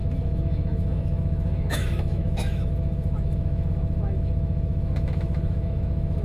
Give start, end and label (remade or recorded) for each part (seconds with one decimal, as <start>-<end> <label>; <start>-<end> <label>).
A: 0.0-6.2 remade